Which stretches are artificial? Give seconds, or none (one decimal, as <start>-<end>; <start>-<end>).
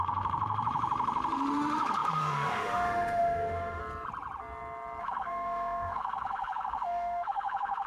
0.0-3.8; 5.0-7.9